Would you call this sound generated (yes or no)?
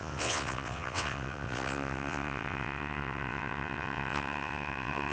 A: yes